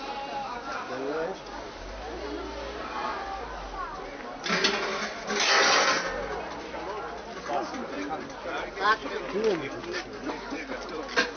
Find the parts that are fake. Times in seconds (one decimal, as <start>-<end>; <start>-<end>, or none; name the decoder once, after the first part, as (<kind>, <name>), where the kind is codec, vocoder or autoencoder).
none